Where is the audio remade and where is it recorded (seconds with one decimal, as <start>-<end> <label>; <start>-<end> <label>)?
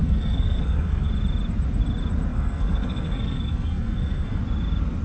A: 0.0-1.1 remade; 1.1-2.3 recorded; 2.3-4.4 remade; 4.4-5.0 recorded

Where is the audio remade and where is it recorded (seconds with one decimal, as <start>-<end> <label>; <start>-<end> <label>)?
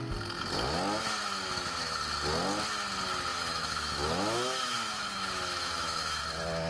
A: 0.0-1.2 recorded; 1.2-2.0 remade; 2.0-3.3 recorded; 3.3-6.2 remade; 6.2-6.7 recorded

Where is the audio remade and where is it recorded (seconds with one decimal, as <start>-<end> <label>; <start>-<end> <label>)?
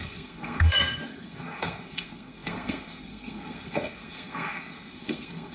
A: 0.0-5.5 remade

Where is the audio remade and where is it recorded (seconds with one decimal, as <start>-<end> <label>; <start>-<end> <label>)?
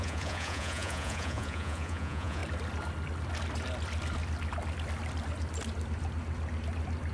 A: 0.0-2.4 remade; 2.4-7.1 recorded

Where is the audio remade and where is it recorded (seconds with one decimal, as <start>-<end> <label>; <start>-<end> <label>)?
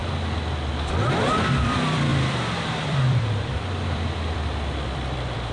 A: 0.0-1.6 recorded; 1.6-5.5 remade